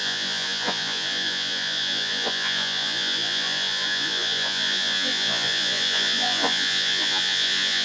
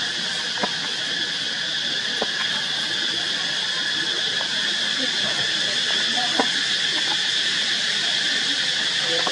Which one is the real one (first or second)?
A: second